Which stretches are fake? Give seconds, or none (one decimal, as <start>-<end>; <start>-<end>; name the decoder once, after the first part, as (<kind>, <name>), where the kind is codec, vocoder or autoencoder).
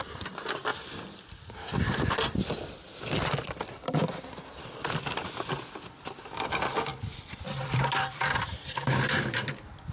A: 0.0-9.9 (vocoder, BigVGAN v2)